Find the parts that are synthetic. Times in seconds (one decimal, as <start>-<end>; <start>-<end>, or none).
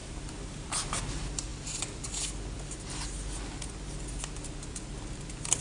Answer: 0.0-1.0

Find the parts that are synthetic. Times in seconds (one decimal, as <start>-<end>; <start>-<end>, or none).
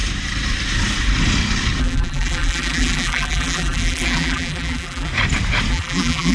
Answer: 1.8-5.1; 5.7-6.3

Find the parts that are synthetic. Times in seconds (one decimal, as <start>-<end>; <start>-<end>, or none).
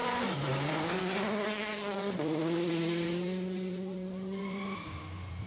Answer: 0.0-1.0; 1.7-5.0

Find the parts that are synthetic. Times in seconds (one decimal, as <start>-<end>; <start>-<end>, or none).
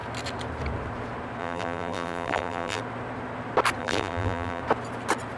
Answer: 1.4-2.8; 3.8-4.6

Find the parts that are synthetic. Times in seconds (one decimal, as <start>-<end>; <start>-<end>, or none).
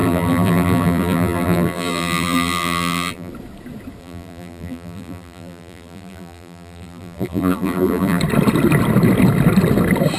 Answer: 0.0-3.3; 4.0-8.2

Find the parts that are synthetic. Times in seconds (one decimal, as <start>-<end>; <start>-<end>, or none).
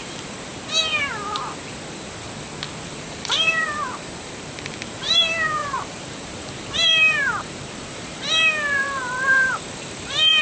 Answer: 0.0-0.5; 2.8-10.4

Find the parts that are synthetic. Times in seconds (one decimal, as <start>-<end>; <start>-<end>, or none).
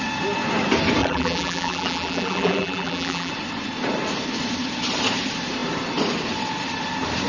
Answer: 1.0-3.3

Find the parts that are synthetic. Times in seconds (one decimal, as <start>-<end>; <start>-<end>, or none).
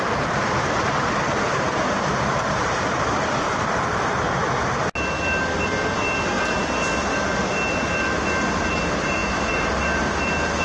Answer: 2.1-4.8; 9.2-10.2